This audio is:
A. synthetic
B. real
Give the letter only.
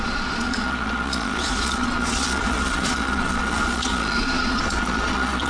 A